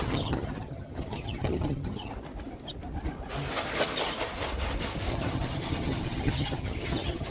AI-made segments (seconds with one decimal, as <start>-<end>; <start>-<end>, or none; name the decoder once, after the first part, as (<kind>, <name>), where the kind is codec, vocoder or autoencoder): 0.0-2.1 (vocoder, HiFi-GAN); 5.1-7.3